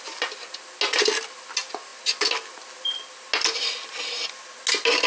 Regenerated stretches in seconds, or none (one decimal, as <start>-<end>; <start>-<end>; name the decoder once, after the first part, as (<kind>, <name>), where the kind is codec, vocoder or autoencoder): none